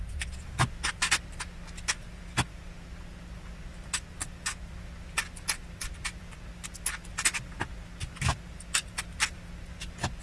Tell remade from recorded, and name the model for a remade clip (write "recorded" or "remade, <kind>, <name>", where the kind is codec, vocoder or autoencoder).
recorded